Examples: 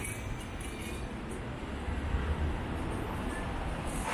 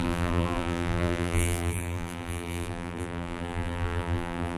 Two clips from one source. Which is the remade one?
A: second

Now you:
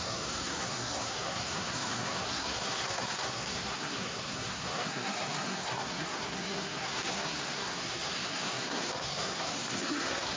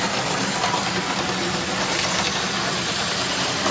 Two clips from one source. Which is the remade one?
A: first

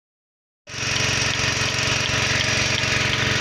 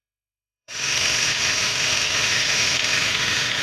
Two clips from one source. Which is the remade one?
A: second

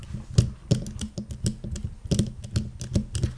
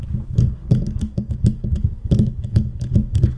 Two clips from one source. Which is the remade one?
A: second